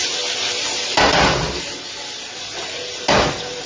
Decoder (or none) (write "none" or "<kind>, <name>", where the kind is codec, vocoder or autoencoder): none